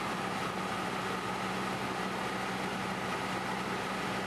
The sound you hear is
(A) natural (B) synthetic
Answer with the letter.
A